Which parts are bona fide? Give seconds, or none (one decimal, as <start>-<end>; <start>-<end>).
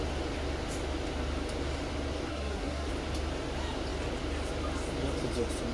0.0-2.3; 2.9-5.7